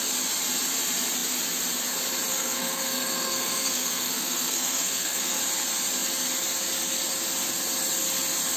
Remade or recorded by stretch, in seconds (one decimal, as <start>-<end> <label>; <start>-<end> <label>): 0.0-2.3 recorded; 2.3-5.4 remade; 5.4-8.6 recorded